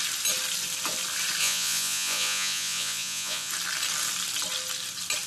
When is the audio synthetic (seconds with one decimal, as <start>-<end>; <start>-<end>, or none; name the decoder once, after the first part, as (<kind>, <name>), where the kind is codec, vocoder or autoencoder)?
1.4-3.5 (vocoder, Vocos)